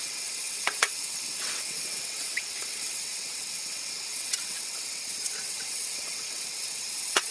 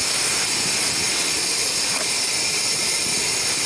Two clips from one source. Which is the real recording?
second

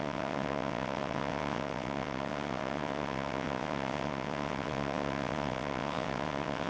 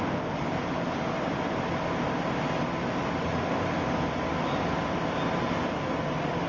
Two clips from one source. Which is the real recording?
second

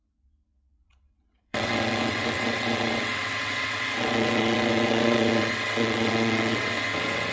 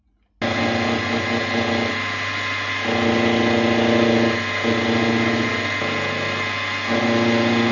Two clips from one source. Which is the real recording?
second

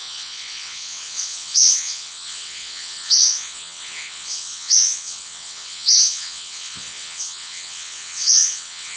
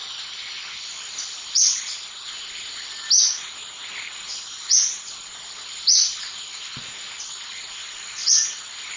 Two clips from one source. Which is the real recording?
second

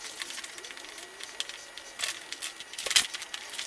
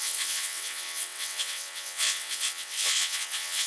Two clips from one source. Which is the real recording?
first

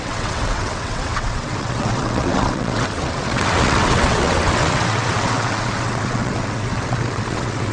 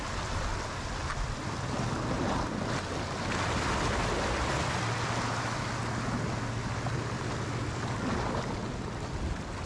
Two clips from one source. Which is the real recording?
second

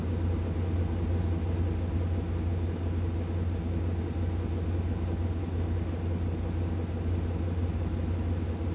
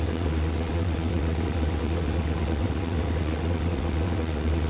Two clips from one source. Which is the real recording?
first